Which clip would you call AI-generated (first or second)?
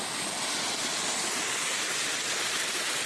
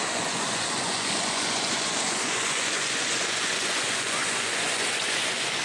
second